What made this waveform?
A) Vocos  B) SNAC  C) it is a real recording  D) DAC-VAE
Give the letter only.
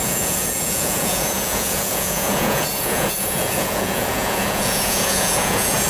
A